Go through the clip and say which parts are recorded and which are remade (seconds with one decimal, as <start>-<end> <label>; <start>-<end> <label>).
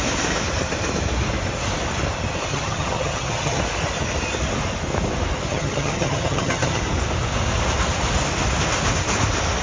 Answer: 0.0-2.5 recorded; 2.5-3.6 remade; 3.6-5.5 recorded; 5.5-6.8 remade; 6.8-9.6 recorded